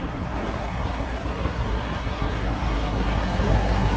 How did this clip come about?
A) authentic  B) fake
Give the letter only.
B